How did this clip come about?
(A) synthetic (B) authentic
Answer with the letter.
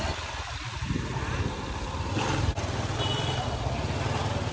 B